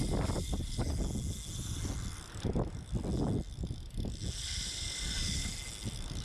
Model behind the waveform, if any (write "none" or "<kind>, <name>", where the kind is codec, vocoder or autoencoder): none